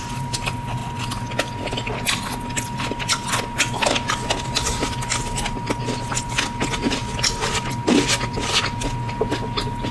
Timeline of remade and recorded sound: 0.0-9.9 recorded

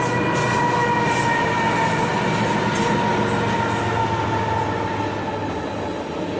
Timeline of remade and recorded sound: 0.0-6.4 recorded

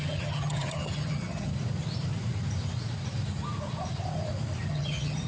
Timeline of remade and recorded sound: 0.0-1.5 remade; 1.5-4.7 recorded; 4.7-5.3 remade

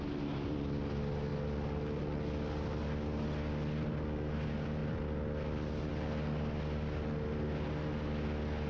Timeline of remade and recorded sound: 0.0-8.7 recorded

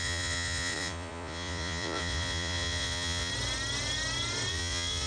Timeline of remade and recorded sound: 0.0-3.3 remade; 3.3-4.5 recorded; 4.5-5.1 remade

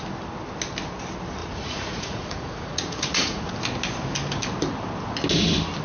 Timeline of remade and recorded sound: 0.0-1.4 recorded; 1.4-3.5 remade; 3.5-5.8 recorded

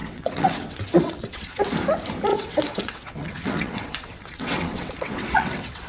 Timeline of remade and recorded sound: 0.0-1.7 remade; 1.7-2.3 recorded; 2.3-5.9 remade

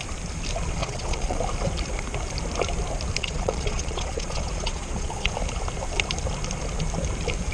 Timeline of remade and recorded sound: 0.0-0.8 recorded; 0.8-1.4 remade; 1.4-3.2 recorded; 3.2-5.3 remade; 5.3-7.5 recorded